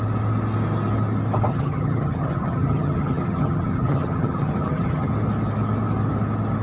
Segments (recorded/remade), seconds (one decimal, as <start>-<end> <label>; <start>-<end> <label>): 0.0-1.5 recorded; 1.5-5.1 remade; 5.1-6.6 recorded